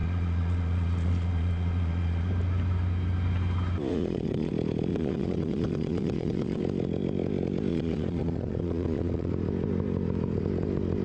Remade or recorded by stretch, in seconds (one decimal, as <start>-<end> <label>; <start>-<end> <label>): 0.0-2.3 remade; 2.3-3.9 recorded; 3.9-4.5 remade; 4.5-4.9 recorded; 4.9-6.6 remade; 6.6-7.7 recorded; 7.7-9.3 remade; 9.3-11.0 recorded